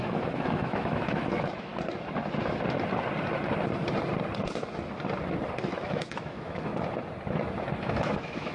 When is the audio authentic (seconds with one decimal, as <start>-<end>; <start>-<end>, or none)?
1.7-5.6; 6.7-7.8